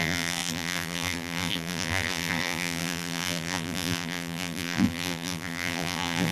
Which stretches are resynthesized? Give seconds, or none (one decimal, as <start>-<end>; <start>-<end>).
0.0-6.3